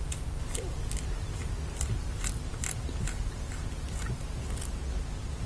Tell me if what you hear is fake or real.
real